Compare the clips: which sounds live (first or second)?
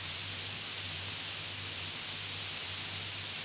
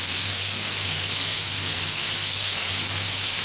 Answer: first